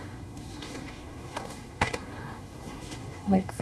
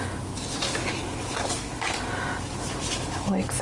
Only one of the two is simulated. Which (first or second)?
first